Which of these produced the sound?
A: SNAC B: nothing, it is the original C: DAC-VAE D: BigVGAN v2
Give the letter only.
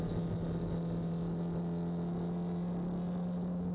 B